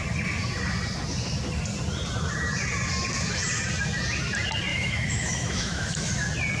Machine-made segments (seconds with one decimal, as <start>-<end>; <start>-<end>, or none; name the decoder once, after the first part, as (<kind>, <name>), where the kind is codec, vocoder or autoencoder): 4.7-6.1 (autoencoder, DAC-VAE)